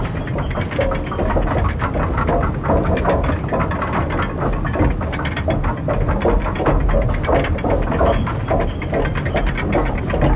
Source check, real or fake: real